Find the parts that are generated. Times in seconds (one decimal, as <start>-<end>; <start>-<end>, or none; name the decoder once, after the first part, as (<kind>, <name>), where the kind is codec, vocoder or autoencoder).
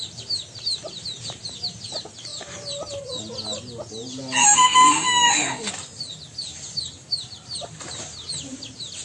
4.4-5.7 (autoencoder, DAC-VAE)